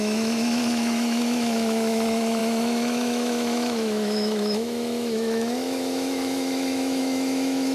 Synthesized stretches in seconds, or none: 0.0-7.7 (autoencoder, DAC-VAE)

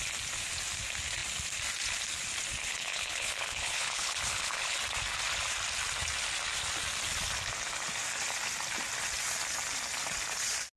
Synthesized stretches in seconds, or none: 2.7-4.8 (codec, HILCodec)

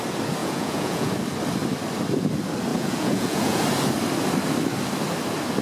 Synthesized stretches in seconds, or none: 0.4-1.1 (vocoder, Vocos); 2.7-3.6

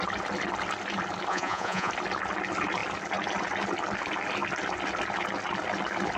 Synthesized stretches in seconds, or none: 1.3-1.9 (vocoder, Vocos)

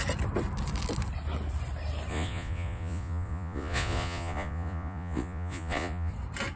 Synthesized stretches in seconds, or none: 2.1-6.1 (vocoder, Vocos)